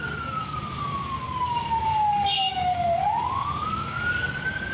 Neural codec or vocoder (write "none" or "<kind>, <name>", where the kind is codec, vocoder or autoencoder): codec, DAC